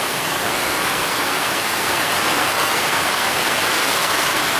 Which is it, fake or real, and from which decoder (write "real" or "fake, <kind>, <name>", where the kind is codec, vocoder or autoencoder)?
fake, codec, SNAC